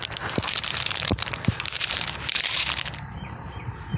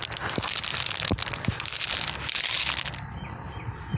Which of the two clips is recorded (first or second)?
second